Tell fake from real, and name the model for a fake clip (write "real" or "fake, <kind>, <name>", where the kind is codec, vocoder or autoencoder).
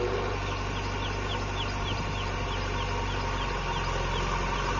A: real